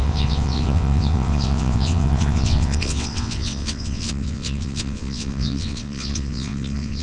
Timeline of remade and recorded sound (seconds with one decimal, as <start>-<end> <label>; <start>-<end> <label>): 0.0-7.0 remade